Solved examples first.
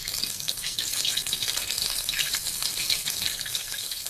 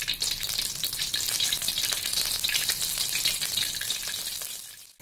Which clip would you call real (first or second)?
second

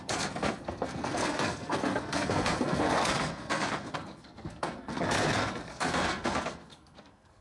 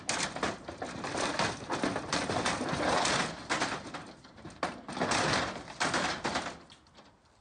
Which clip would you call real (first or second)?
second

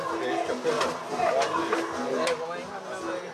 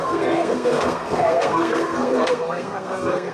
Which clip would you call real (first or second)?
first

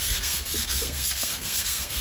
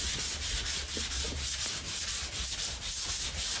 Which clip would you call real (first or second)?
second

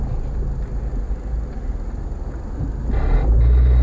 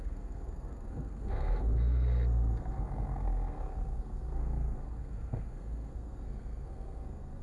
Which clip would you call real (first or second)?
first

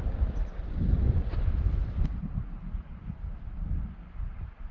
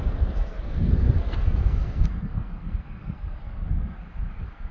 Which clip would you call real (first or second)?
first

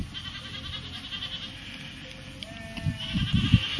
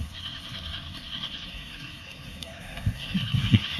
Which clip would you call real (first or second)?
first